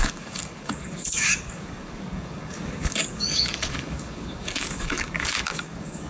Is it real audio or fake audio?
fake